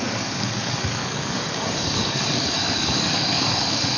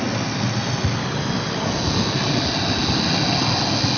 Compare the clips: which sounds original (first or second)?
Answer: second